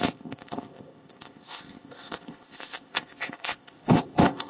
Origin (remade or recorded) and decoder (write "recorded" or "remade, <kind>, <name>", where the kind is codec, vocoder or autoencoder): remade, codec, ZipCodec